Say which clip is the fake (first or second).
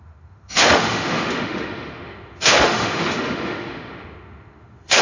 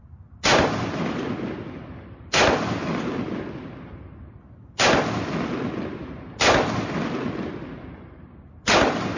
first